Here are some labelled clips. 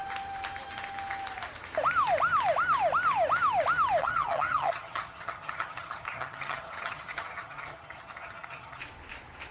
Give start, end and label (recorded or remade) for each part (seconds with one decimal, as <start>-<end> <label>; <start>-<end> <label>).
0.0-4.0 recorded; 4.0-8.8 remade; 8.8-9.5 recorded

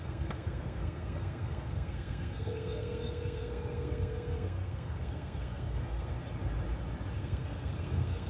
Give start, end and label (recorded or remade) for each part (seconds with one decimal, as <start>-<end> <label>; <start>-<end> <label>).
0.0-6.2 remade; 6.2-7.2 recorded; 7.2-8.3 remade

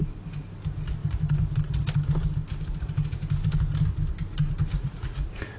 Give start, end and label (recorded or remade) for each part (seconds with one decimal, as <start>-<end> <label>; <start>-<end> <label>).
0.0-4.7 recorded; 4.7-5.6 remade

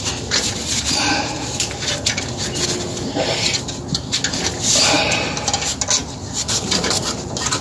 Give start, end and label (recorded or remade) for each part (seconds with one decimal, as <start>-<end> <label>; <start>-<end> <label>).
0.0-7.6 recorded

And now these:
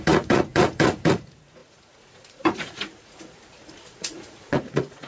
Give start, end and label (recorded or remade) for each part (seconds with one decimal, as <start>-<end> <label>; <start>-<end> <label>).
0.0-5.1 remade

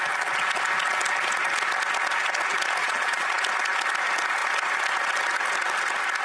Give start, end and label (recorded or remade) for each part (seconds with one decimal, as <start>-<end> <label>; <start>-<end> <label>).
0.0-2.8 recorded; 2.8-3.4 remade; 3.4-6.2 recorded